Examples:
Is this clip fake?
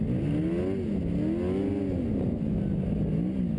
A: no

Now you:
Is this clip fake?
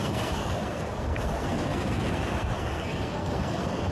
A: yes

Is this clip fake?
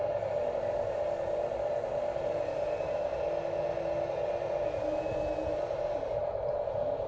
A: no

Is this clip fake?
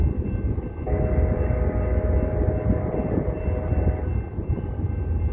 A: no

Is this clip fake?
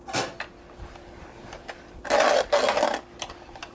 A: no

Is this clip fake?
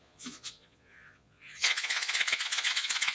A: yes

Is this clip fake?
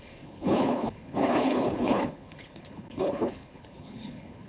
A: yes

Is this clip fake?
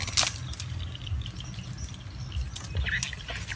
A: no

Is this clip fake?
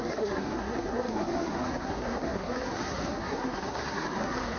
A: yes